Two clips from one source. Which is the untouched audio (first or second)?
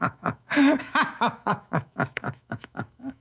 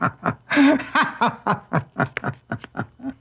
second